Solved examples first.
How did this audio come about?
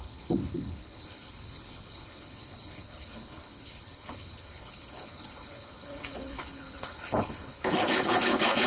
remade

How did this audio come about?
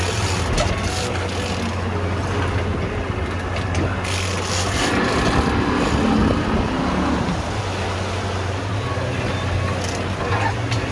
recorded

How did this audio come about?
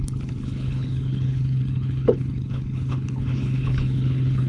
remade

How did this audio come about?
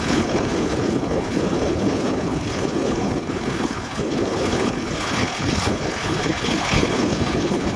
remade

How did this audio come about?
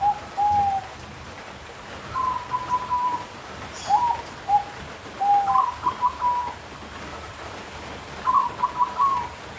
recorded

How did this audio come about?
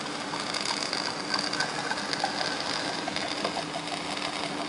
recorded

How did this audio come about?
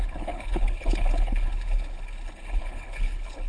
remade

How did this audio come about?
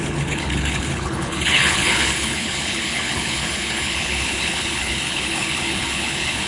remade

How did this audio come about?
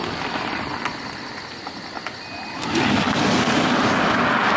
recorded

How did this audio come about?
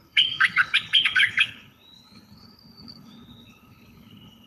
remade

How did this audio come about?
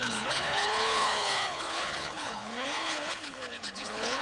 remade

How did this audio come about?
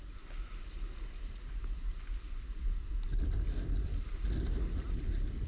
recorded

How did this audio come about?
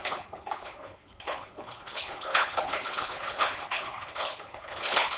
remade